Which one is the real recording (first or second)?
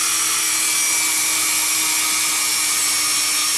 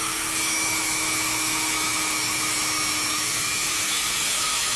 first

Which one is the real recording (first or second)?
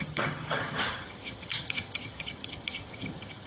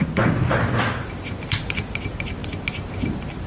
second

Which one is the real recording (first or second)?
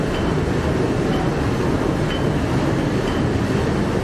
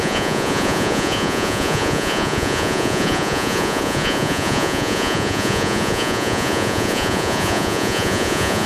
first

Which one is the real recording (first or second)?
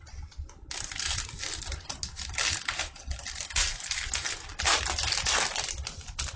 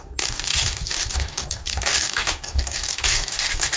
first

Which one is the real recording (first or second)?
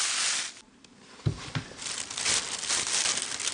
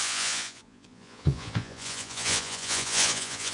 first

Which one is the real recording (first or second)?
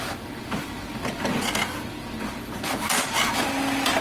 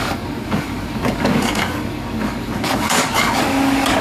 first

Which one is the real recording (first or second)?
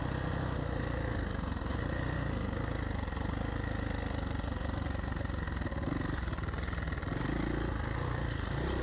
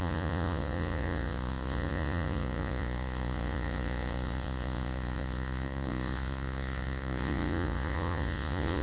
first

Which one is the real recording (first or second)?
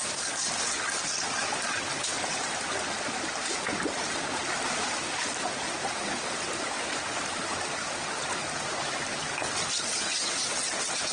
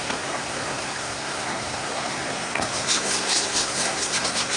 first